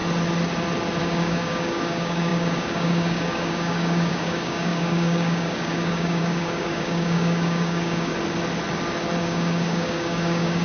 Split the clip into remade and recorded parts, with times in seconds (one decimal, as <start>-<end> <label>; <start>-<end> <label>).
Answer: 0.0-1.0 recorded; 1.0-8.1 remade; 8.1-9.2 recorded; 9.2-10.6 remade